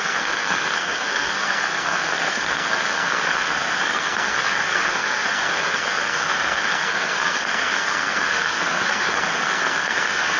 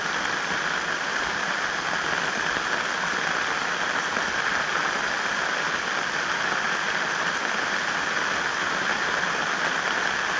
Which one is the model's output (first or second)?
first